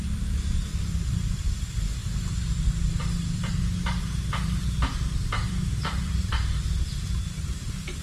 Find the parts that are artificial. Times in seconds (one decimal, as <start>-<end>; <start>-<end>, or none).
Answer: 0.0-8.0